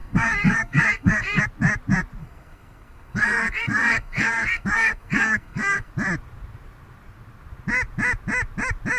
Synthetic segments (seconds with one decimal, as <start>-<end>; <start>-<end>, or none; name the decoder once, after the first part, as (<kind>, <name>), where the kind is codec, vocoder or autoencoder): 0.0-1.4 (codec, SNAC); 2.2-5.9